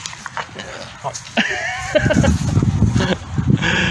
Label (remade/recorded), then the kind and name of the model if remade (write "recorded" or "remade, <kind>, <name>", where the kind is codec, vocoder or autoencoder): recorded